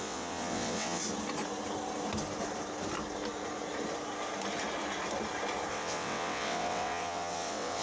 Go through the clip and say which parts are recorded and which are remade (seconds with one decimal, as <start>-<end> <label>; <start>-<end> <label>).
0.0-1.0 remade; 1.0-5.7 recorded; 5.7-7.8 remade